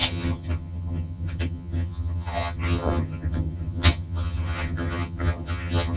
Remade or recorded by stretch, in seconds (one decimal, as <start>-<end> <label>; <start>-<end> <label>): 0.0-6.0 remade